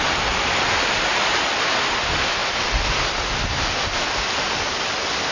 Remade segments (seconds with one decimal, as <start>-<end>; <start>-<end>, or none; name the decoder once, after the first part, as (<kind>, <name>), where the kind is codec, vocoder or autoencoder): none